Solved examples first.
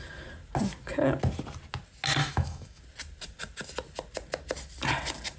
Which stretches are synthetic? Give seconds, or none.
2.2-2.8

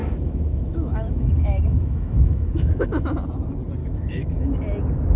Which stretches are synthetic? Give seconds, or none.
0.0-3.1; 3.8-4.6

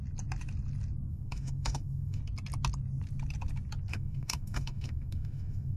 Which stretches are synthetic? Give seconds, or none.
1.1-2.2; 3.9-5.8

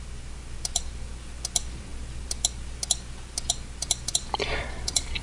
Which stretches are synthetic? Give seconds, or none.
none

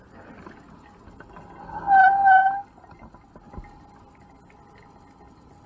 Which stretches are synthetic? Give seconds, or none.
none

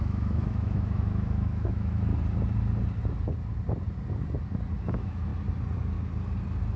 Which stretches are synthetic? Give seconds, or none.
0.0-2.1; 4.8-5.3

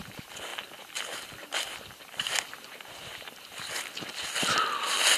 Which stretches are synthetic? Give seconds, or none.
none

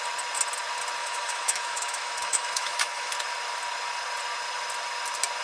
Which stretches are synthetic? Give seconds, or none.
1.0-3.1